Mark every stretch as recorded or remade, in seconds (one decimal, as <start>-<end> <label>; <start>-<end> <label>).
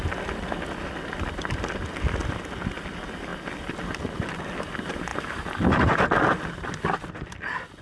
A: 0.0-7.8 recorded